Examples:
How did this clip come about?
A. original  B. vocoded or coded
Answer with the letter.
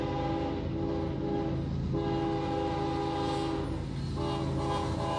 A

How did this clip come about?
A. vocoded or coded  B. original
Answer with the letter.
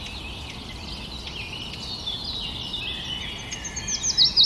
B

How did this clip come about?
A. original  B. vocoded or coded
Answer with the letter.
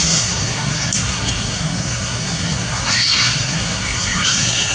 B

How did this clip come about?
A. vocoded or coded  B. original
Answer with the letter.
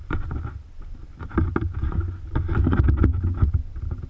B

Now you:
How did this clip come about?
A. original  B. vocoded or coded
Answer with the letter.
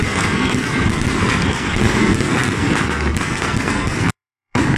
B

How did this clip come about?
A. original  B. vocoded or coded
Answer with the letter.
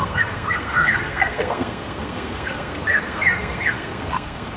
B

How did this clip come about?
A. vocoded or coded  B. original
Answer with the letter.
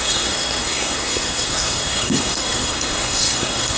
A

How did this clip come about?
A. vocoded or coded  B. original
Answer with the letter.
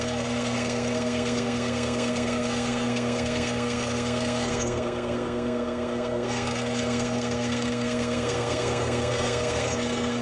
A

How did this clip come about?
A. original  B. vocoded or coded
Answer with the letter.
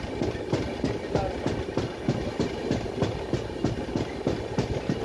A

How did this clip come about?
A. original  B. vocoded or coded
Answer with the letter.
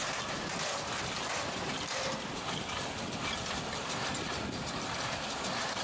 A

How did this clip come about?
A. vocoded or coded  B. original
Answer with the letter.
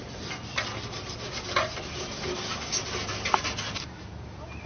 B